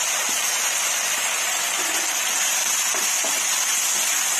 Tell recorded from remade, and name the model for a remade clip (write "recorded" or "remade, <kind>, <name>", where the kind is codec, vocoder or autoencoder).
recorded